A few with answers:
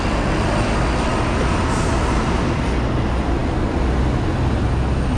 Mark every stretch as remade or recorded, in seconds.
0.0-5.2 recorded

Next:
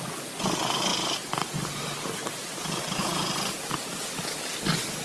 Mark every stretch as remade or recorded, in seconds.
0.0-5.0 recorded

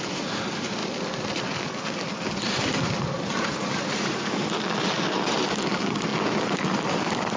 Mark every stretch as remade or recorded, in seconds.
0.0-7.4 recorded